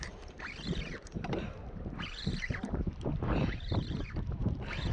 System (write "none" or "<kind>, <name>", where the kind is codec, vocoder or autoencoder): vocoder, BigVGAN v2